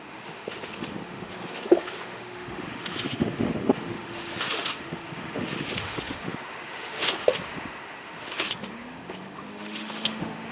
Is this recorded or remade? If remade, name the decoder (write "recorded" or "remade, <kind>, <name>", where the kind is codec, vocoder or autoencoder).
remade, autoencoder, DAC-VAE